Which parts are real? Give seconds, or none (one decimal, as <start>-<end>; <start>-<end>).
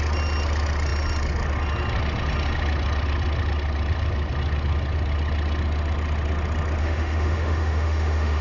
0.0-6.8